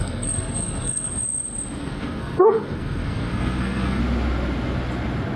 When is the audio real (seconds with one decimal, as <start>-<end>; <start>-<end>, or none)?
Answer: 1.1-1.8; 4.0-5.4